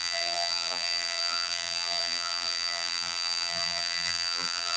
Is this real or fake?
fake